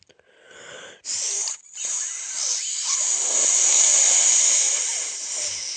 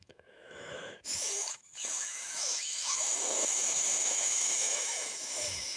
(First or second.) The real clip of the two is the first